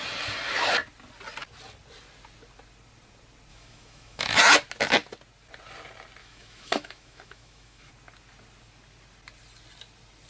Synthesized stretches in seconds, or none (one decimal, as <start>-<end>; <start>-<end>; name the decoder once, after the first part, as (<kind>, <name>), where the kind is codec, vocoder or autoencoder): 3.5-4.4 (autoencoder, DAC-VAE); 6.2-7.9